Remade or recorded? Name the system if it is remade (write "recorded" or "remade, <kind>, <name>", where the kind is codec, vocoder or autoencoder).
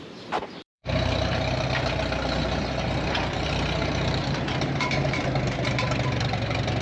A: remade, vocoder, BigVGAN v2